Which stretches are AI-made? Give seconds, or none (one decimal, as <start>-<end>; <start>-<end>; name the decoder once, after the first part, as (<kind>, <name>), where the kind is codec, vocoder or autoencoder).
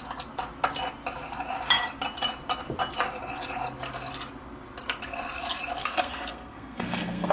5.8-7.3 (codec, SNAC)